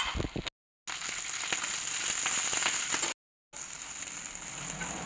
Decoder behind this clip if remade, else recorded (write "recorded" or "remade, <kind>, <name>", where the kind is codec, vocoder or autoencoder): recorded